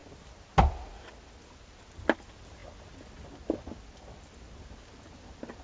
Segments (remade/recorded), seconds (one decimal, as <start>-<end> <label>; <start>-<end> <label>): 0.0-5.6 recorded

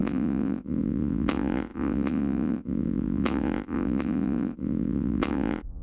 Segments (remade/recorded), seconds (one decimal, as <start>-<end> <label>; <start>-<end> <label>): 0.0-5.8 remade

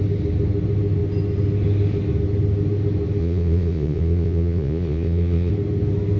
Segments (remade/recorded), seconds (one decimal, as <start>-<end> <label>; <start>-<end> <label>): 0.0-3.2 recorded; 3.2-5.5 remade; 5.5-6.2 recorded

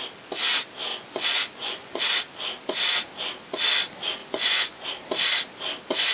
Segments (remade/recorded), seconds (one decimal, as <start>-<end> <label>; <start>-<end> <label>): 0.0-0.9 recorded; 0.9-2.0 remade; 2.0-4.2 recorded; 4.2-4.9 remade; 4.9-6.1 recorded

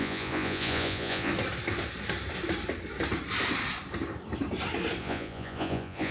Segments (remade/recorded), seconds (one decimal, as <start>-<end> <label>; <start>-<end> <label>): 0.0-1.3 remade; 1.3-5.0 recorded; 5.0-6.1 remade